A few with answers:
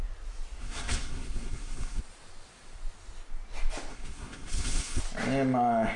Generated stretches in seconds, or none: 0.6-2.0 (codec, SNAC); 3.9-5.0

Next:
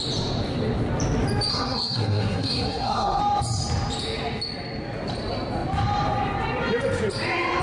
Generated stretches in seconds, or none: 1.5-3.2 (codec, SNAC)